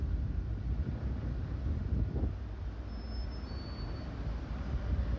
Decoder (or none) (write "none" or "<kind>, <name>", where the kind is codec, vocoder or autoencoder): none